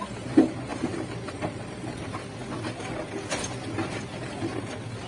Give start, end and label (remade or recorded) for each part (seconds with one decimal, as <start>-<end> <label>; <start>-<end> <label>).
0.0-0.7 recorded; 0.7-2.0 remade; 2.0-5.1 recorded